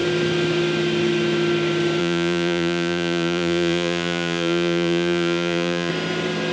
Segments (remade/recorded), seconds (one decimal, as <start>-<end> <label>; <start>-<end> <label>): 0.0-2.0 recorded; 2.0-5.9 remade; 5.9-6.5 recorded